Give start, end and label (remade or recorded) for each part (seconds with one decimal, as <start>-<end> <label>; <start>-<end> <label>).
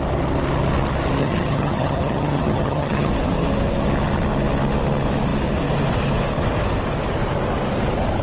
0.0-1.2 recorded; 1.2-3.1 remade; 3.1-8.2 recorded